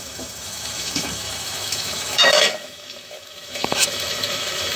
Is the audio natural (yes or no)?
no